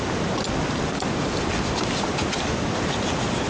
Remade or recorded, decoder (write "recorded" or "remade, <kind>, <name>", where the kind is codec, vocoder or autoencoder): recorded